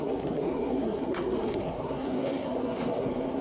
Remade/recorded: remade